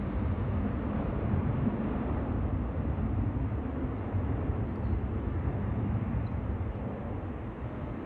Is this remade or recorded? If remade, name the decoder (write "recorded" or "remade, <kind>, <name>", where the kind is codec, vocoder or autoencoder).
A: recorded